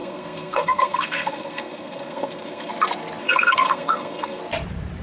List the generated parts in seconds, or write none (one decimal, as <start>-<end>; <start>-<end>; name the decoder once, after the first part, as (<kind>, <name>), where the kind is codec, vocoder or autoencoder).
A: 0.0-2.7 (codec, SNAC); 3.2-4.4